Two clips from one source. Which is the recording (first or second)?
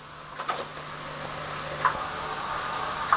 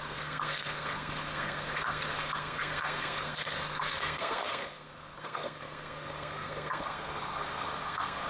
first